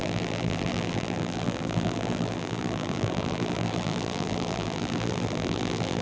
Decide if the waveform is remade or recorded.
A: remade